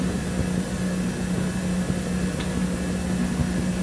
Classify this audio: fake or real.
real